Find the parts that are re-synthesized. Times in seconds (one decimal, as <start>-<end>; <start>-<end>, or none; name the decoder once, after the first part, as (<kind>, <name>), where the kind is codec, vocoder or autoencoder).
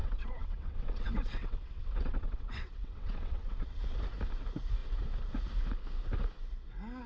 0.0-3.8 (vocoder, WaveNeXt)